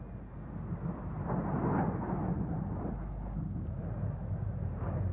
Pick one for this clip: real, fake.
real